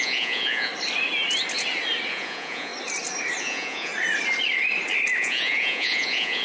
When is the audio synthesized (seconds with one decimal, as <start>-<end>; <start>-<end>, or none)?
0.0-0.7; 2.1-2.7; 3.4-3.9; 5.2-6.4